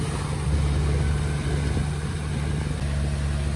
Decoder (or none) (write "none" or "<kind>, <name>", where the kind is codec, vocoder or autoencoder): none